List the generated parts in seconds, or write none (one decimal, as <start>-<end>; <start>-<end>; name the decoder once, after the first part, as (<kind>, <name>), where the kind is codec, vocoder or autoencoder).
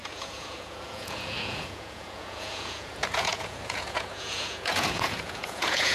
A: 0.0-5.9 (vocoder, Vocos)